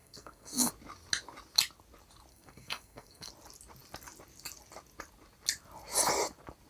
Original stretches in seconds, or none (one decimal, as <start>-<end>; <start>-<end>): 0.7-2.3; 3.3-6.7